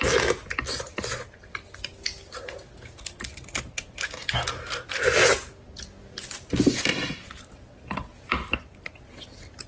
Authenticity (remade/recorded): recorded